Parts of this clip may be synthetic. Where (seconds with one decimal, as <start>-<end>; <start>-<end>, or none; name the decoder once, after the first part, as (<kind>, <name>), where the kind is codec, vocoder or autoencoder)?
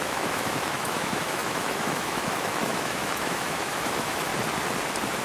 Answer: 0.0-4.3 (autoencoder, DAC-VAE)